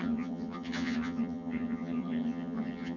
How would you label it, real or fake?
fake